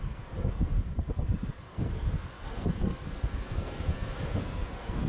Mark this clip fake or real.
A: fake